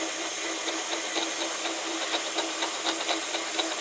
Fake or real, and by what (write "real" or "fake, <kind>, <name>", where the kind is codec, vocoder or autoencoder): real